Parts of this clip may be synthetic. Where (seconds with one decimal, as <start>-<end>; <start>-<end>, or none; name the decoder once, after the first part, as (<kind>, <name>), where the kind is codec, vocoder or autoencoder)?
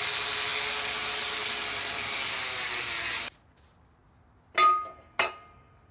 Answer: none